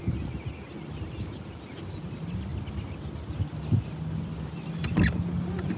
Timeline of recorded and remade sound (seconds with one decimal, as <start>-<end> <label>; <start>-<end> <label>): 0.0-5.8 recorded